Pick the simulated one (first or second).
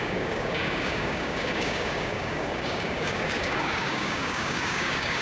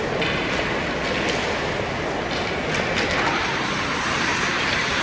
first